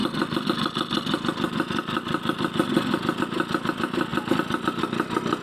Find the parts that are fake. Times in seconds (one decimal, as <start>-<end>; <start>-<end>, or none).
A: none